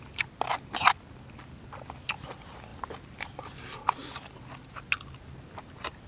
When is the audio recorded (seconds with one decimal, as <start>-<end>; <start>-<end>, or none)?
0.0-4.0; 4.8-6.1